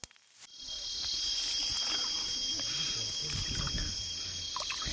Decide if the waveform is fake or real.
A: real